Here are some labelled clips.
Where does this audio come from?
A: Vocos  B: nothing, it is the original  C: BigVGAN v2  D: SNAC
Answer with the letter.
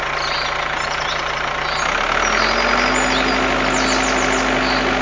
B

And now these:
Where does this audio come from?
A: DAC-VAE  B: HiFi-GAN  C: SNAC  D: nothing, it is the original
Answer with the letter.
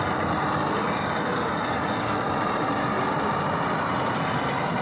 D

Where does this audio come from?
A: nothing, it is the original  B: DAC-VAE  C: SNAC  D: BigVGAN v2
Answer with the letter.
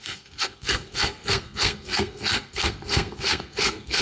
C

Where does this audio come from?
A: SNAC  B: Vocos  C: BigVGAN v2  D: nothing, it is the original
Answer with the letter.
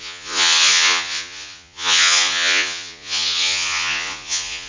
B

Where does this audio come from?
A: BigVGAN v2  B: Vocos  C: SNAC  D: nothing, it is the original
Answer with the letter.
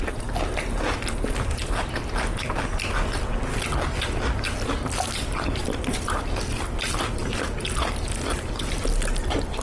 D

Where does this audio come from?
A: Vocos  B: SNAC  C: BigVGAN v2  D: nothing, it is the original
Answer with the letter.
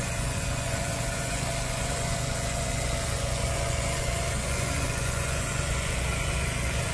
A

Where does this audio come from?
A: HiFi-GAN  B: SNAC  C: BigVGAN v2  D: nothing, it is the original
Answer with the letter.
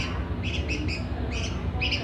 D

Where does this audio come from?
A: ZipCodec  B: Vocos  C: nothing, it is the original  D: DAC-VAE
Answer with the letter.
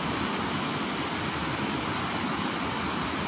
C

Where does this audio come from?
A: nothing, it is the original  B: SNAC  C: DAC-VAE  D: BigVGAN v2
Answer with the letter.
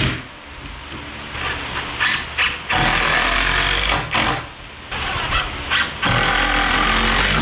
A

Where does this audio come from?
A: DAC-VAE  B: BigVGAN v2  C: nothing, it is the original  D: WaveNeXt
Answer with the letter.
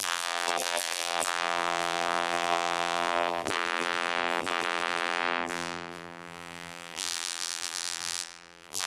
B